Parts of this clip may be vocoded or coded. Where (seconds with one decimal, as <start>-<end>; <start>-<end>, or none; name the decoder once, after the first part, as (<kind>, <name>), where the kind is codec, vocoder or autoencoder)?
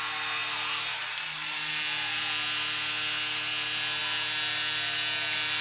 none